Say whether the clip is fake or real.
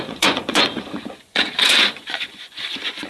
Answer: fake